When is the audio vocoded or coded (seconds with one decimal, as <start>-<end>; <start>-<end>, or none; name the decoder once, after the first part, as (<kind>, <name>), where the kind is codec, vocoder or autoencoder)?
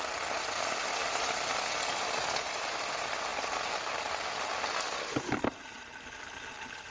none